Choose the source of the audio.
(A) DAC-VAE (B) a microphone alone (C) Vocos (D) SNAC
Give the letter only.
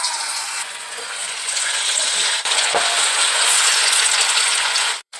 C